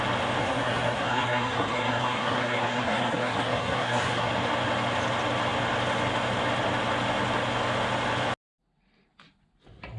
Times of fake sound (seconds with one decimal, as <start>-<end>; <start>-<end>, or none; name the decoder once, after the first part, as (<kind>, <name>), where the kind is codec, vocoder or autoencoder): 0.4-4.3 (codec, SNAC)